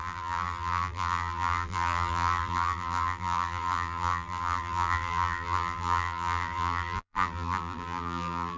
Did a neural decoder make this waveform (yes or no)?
yes